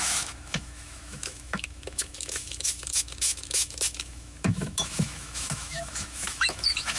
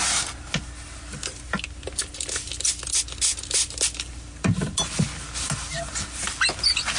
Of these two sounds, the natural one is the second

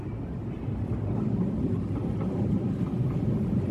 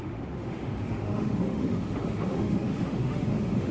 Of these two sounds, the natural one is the first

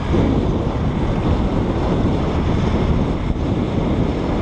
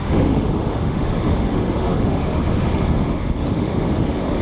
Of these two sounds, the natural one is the first